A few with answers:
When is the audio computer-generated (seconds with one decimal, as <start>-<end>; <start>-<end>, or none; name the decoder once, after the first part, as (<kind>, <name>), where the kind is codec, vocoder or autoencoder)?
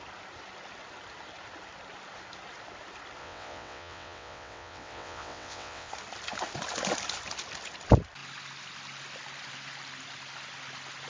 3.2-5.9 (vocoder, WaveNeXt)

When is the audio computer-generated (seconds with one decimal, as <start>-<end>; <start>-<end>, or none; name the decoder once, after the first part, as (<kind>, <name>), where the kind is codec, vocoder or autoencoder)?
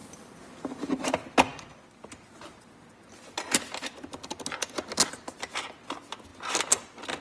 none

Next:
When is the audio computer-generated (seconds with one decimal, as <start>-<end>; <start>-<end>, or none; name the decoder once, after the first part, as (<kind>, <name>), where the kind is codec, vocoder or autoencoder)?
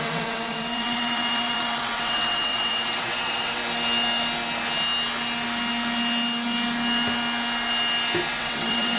0.0-3.6 (vocoder, WaveNeXt); 8.3-9.0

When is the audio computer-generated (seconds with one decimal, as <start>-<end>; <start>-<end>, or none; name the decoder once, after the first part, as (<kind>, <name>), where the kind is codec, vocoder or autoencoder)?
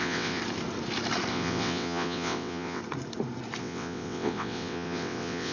0.0-0.4 (vocoder, WaveNeXt); 1.3-2.8; 3.6-5.5